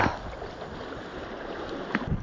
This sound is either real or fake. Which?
real